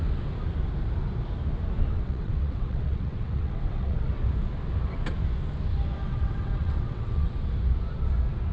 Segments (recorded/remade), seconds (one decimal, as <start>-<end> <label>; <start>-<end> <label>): 0.0-1.9 recorded; 1.9-4.1 remade; 4.1-6.0 recorded; 6.0-7.3 remade; 7.3-8.5 recorded